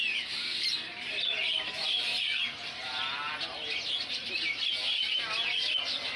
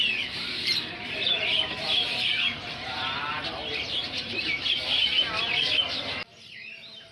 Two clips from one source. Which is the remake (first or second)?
second